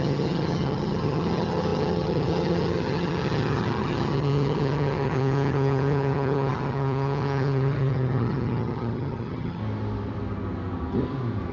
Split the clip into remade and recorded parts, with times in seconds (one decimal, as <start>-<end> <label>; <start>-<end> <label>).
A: 0.0-9.6 remade; 9.6-11.5 recorded